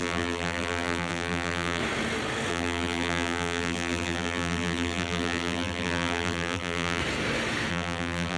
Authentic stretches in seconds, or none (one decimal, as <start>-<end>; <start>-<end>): 1.8-2.5; 7.0-7.7